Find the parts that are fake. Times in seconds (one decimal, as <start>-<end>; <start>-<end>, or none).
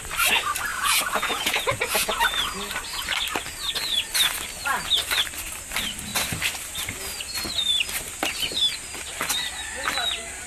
0.7-2.2